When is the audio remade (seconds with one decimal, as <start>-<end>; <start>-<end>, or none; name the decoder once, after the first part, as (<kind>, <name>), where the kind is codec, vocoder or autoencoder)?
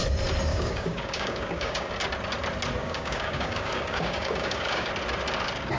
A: 0.5-1.9 (codec, DAC); 2.8-4.9